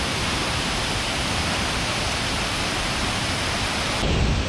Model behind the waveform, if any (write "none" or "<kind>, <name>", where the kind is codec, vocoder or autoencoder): none